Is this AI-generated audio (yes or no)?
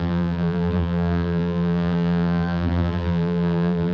yes